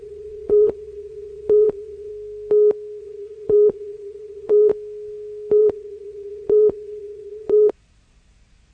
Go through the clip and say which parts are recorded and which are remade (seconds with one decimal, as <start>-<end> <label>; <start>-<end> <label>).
0.0-2.1 remade; 2.1-3.0 recorded; 3.0-4.7 remade; 4.7-5.6 recorded; 5.6-8.7 remade

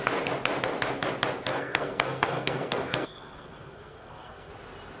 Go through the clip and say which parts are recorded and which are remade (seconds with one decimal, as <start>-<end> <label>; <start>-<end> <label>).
0.0-1.5 recorded; 1.5-4.5 remade; 4.5-5.0 recorded

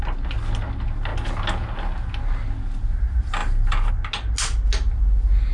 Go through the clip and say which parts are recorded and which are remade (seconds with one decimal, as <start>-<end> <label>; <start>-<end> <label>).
0.0-5.5 recorded

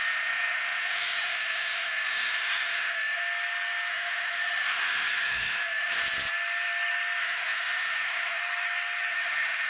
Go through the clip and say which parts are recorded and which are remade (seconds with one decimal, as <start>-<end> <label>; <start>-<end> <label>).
0.0-3.2 remade; 3.2-3.9 recorded; 3.9-6.0 remade; 6.0-7.2 recorded; 7.2-8.4 remade; 8.4-9.1 recorded; 9.1-9.7 remade

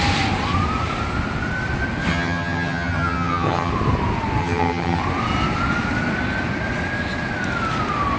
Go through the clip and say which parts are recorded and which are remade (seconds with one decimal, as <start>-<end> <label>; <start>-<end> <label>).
0.0-2.1 recorded; 2.1-3.7 remade; 3.7-4.4 recorded; 4.4-5.0 remade; 5.0-8.2 recorded

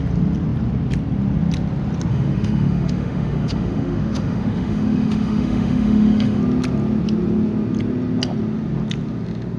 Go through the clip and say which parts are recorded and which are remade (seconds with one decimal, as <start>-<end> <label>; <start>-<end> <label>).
0.0-2.1 recorded; 2.1-6.4 remade; 6.4-9.6 recorded